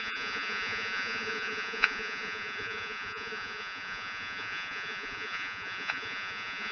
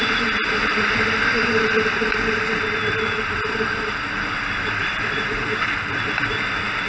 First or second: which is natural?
second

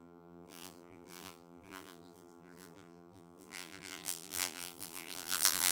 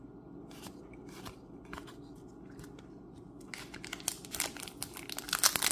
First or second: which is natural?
second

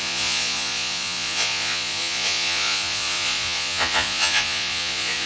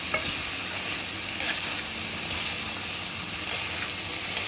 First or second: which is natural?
second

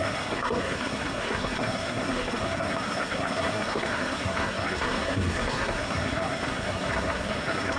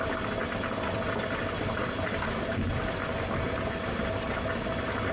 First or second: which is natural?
second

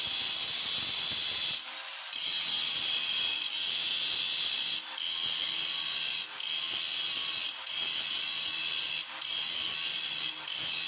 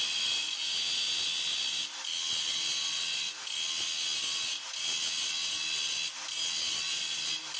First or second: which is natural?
second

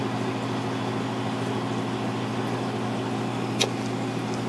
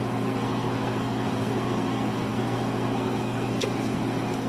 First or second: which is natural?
first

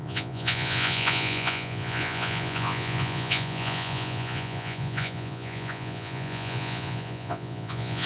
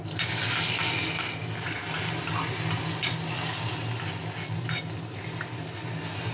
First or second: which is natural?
second